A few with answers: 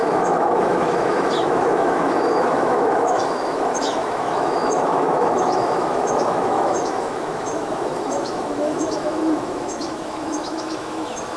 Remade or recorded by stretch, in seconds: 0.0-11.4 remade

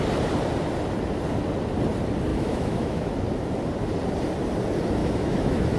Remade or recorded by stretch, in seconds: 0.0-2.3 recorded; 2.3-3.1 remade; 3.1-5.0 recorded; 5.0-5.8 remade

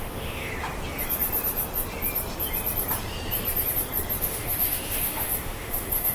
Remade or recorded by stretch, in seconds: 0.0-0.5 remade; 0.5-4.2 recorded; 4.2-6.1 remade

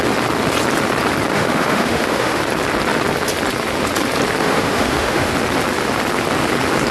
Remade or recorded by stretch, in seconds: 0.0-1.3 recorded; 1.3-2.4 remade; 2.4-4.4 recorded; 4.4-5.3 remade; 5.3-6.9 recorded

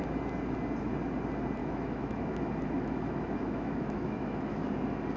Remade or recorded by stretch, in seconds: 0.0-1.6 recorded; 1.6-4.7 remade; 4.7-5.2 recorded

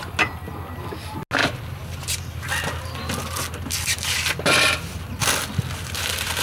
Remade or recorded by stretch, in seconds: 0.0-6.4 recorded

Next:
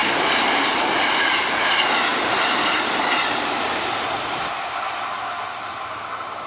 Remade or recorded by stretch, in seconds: 0.0-6.5 recorded